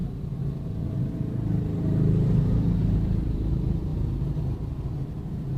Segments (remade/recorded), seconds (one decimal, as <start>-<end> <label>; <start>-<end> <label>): 0.0-1.0 recorded; 1.0-3.9 remade; 3.9-5.6 recorded